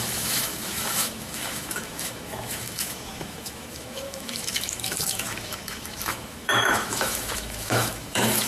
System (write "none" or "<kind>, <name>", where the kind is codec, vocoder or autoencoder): autoencoder, DAC-VAE